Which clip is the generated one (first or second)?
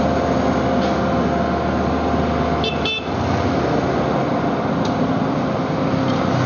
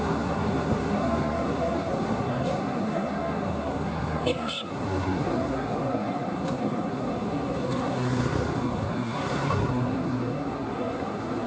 second